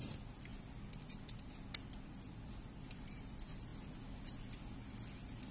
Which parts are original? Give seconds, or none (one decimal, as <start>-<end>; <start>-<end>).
0.5-2.7; 3.7-5.5